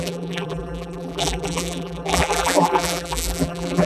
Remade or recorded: remade